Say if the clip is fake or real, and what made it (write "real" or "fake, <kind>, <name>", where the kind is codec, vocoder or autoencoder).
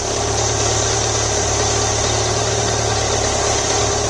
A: real